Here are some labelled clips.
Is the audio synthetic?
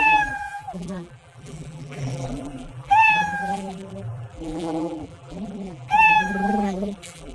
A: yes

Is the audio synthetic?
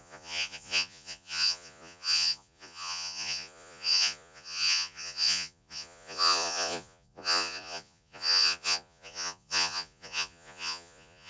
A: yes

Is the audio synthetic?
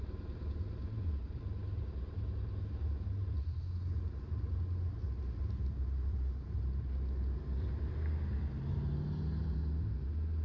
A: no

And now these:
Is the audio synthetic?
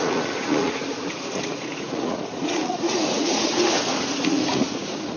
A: yes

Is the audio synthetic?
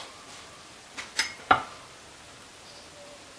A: yes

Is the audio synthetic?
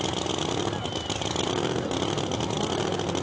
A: no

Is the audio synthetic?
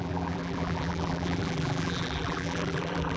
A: yes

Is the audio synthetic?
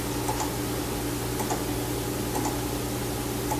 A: no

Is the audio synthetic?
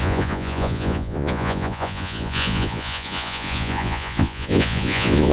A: yes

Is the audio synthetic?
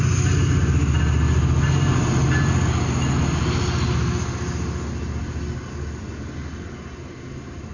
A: no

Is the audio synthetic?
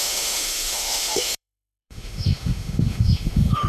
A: yes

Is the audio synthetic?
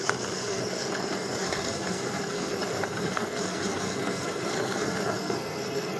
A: yes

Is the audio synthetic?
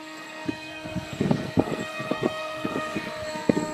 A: yes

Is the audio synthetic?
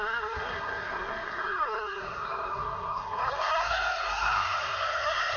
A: yes